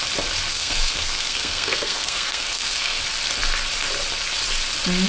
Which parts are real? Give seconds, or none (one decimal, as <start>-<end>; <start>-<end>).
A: 0.0-0.5; 3.0-5.1

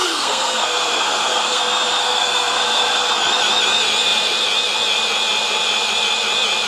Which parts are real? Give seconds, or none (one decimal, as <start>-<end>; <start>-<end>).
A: 1.6-2.0; 3.1-6.7

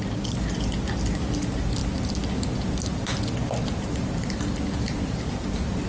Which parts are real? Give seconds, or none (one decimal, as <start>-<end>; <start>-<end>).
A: 0.0-5.9